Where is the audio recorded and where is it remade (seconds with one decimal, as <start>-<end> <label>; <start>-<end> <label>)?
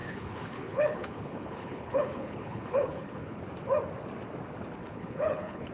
0.0-3.4 remade; 3.4-4.8 recorded; 4.8-5.7 remade